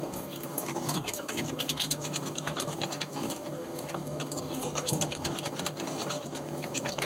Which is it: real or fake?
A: fake